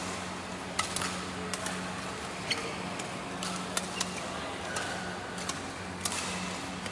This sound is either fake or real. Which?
real